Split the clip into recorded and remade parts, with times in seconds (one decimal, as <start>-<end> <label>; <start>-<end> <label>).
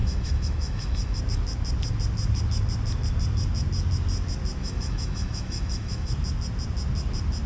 0.0-1.2 remade; 1.2-4.6 recorded; 4.6-6.1 remade; 6.1-7.5 recorded